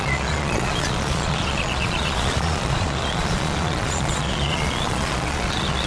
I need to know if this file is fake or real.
fake